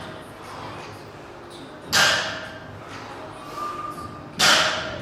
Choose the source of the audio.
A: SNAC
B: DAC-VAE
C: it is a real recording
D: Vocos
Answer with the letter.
C